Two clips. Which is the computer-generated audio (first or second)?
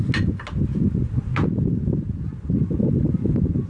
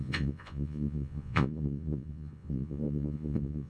second